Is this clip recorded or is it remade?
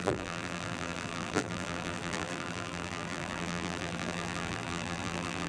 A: remade